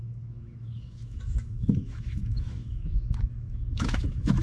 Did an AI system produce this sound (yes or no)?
yes